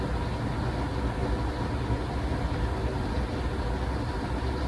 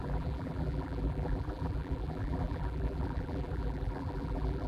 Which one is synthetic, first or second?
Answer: second